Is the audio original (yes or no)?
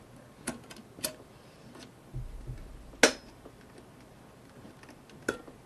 yes